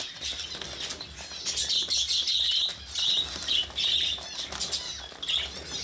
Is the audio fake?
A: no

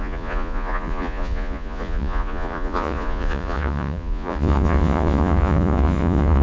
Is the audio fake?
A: yes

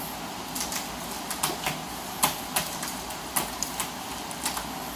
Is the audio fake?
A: yes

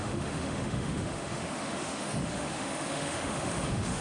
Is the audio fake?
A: yes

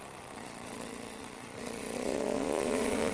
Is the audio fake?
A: yes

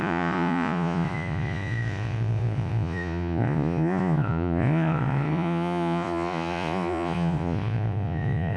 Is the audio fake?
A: yes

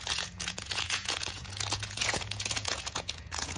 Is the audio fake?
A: yes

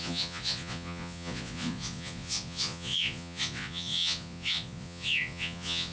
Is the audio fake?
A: yes